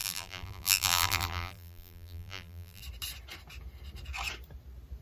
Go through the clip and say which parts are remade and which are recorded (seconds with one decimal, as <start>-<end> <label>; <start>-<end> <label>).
0.0-2.8 remade; 2.8-5.0 recorded